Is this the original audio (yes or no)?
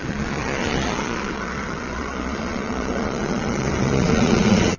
no